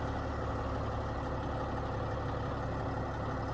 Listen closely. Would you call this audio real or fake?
real